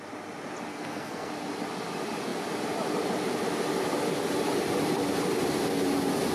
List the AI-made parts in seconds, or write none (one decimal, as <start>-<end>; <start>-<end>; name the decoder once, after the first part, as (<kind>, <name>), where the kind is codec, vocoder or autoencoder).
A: 0.7-1.3 (codec, SNAC)